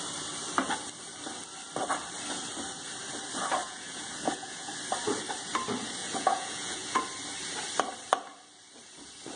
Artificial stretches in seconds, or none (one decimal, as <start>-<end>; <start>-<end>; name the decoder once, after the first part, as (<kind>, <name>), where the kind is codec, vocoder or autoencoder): 3.6-4.7 (vocoder, Vocos); 6.0-7.0